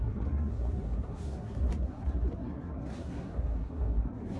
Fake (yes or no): yes